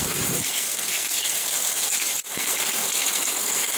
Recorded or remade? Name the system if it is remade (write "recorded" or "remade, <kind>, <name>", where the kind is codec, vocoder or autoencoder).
remade, codec, SNAC